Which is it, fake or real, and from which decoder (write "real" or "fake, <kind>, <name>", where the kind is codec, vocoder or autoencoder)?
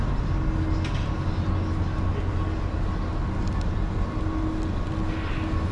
real